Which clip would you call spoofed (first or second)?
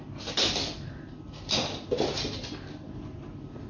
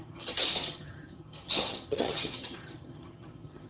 second